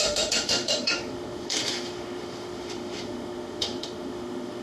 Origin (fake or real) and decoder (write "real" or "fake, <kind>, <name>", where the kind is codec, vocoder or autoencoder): fake, autoencoder, DAC-VAE